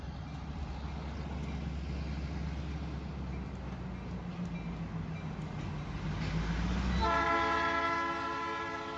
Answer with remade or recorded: recorded